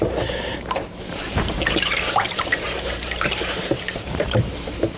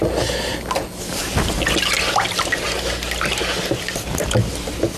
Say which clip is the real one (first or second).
second